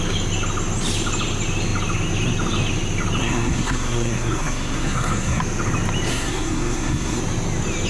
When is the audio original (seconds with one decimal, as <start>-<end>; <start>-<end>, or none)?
0.0-3.2; 5.4-6.1; 7.2-7.9